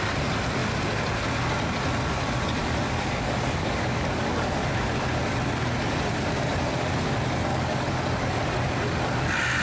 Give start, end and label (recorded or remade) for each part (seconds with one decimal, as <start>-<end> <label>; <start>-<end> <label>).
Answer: 0.0-2.6 recorded; 2.6-4.6 remade; 4.6-7.5 recorded; 7.5-8.1 remade; 8.1-9.6 recorded

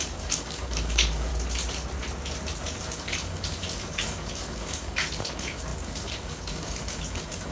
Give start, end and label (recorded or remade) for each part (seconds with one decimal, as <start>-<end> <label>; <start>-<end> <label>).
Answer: 0.0-1.3 remade; 1.3-2.8 recorded; 2.8-7.5 remade

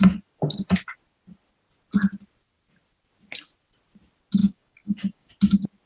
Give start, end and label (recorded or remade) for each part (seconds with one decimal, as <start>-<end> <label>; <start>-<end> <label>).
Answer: 0.0-4.4 recorded; 4.4-5.3 remade; 5.3-5.9 recorded

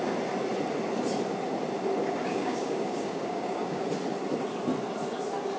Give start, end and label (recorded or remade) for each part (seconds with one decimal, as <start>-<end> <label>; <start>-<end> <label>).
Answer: 0.0-2.0 recorded; 2.0-3.8 remade; 3.8-5.6 recorded